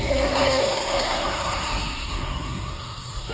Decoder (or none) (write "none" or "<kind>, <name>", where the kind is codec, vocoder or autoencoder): codec, SNAC